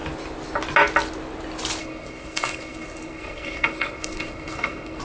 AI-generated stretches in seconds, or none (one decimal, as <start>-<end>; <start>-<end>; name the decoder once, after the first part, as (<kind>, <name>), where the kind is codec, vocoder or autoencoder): 1.8-5.0 (codec, SNAC)